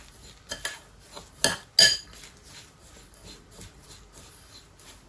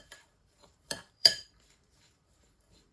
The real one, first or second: first